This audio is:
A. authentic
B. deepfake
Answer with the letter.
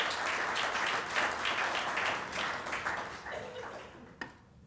A